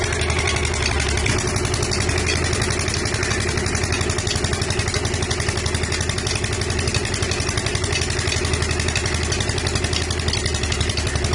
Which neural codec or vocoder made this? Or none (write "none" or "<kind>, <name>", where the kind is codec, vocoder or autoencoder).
none